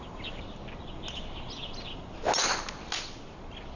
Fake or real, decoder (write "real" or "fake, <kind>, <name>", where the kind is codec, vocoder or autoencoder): real